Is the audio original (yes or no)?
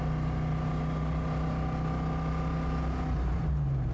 yes